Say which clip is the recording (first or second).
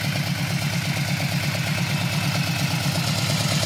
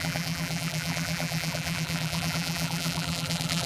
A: first